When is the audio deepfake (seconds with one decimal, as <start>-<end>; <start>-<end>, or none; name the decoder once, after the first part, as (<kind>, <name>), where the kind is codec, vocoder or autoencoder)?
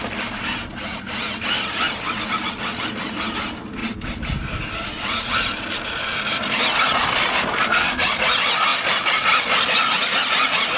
none